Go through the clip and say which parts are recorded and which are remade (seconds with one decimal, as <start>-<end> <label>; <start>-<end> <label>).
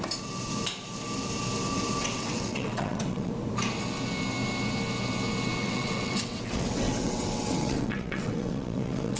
0.0-2.0 recorded; 2.0-3.3 remade; 3.3-5.6 recorded; 5.6-9.2 remade